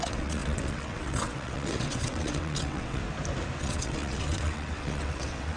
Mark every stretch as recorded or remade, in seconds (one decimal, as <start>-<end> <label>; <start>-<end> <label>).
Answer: 0.0-3.0 remade; 3.0-3.6 recorded; 3.6-5.6 remade